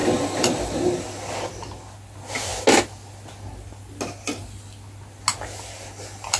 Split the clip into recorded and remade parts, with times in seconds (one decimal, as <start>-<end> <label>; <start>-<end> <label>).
0.0-6.4 recorded